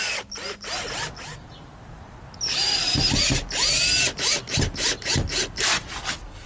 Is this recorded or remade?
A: recorded